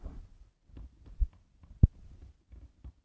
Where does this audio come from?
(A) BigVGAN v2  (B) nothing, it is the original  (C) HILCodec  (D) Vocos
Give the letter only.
B